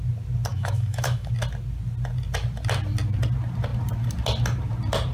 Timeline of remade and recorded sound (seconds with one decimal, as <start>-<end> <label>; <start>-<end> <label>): 0.0-0.5 recorded; 0.5-1.3 remade; 1.3-5.1 recorded